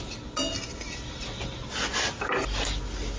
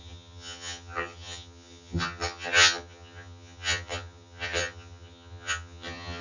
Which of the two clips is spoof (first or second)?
second